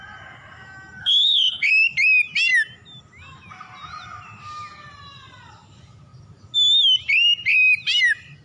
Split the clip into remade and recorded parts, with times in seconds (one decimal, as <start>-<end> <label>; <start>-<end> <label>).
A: 0.0-1.0 recorded; 1.0-1.7 remade; 1.7-8.4 recorded

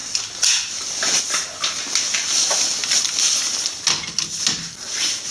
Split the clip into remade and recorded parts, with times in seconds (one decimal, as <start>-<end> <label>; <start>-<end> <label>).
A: 0.0-5.3 recorded

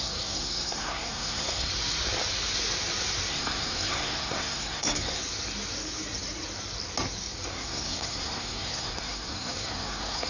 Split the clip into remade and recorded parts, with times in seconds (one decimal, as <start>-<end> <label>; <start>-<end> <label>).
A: 0.0-1.7 remade; 1.7-3.3 recorded; 3.3-5.2 remade; 5.2-7.5 recorded; 7.5-10.3 remade

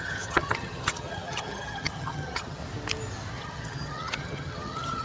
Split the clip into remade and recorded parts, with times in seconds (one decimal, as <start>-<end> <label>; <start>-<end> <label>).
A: 0.0-2.6 remade; 2.6-3.4 recorded; 3.4-5.0 remade

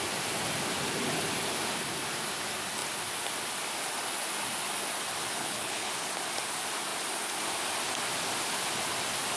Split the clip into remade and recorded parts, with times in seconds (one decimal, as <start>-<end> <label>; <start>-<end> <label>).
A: 0.0-5.4 recorded; 5.4-5.9 remade; 5.9-9.4 recorded